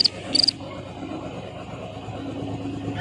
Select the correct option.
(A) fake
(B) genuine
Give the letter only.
B